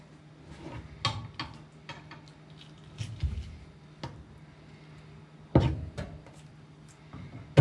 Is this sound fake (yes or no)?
no